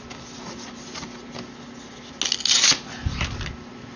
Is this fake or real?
real